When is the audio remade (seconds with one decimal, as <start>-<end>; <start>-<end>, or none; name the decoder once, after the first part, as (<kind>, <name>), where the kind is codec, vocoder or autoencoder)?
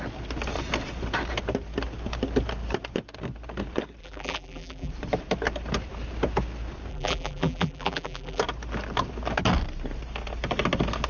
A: 4.0-4.9 (vocoder, BigVGAN v2); 6.9-8.4